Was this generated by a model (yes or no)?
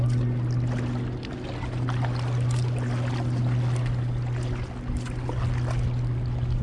no